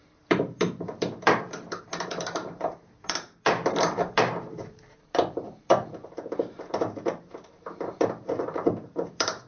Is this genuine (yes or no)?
no